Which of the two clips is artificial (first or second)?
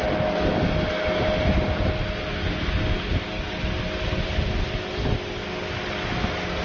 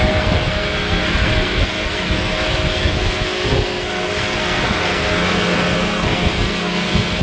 second